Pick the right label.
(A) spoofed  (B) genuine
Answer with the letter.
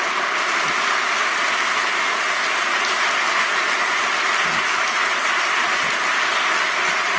B